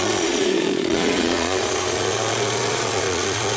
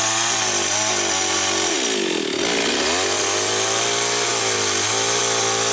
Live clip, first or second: second